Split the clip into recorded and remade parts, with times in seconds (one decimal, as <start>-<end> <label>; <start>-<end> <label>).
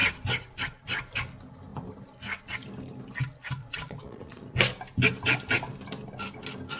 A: 0.0-3.6 recorded; 3.6-4.4 remade; 4.4-6.8 recorded